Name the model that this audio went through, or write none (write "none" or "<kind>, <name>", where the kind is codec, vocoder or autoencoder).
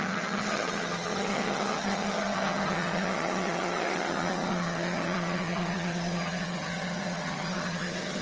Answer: vocoder, HiFi-GAN